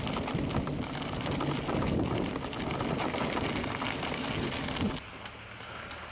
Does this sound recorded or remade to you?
recorded